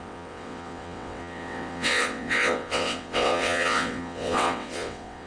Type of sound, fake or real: fake